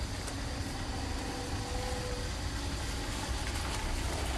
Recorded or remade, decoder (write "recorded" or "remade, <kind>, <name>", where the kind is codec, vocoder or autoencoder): recorded